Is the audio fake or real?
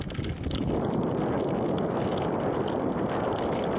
real